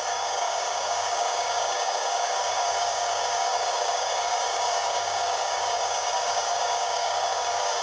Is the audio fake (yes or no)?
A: yes